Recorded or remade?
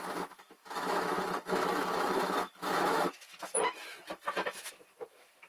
remade